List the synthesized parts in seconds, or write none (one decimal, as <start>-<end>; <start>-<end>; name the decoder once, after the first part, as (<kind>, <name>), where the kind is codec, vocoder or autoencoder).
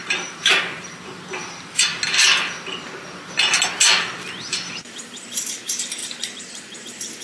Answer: 0.0-1.9 (vocoder, BigVGAN v2); 4.4-7.2